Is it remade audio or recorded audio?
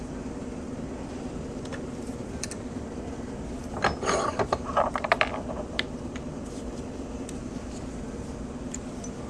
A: remade